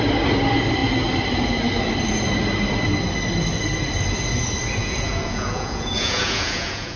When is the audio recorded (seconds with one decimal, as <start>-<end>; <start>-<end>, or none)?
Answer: 0.0-4.8

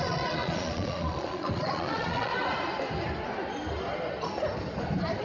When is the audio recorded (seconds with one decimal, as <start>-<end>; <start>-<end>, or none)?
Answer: 2.3-5.2

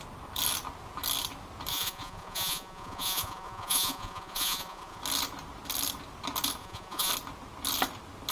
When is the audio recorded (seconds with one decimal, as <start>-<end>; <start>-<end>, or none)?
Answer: 0.0-1.7; 5.0-6.6; 7.1-8.3

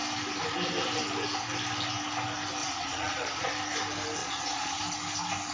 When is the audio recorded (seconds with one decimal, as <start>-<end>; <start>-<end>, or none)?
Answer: 0.0-2.6; 3.5-4.2; 4.8-5.5

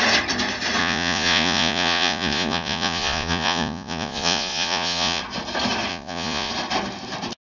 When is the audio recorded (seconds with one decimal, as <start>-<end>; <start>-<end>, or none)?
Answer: 0.0-0.8; 5.2-5.9; 6.5-7.5

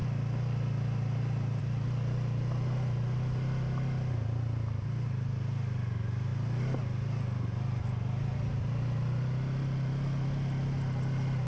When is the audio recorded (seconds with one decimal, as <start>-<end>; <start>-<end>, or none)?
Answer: 0.0-11.5

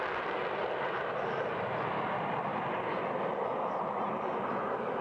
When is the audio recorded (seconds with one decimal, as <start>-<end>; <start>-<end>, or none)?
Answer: 0.0-5.0